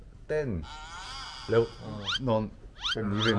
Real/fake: real